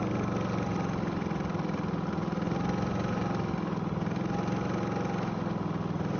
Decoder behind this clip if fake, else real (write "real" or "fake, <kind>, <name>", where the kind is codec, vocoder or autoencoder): real